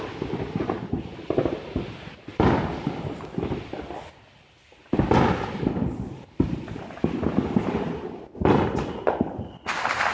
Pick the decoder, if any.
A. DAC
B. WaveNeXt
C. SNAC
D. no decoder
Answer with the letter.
D